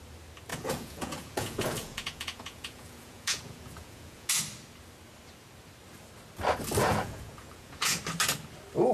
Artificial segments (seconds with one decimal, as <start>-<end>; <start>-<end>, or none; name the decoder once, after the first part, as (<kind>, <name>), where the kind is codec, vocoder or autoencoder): 0.5-4.3 (vocoder, Vocos); 6.8-8.0